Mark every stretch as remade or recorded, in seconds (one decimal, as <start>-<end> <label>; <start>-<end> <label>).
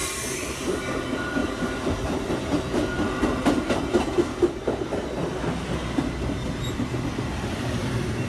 0.0-0.8 remade; 0.8-1.4 recorded; 1.4-2.3 remade; 2.3-8.3 recorded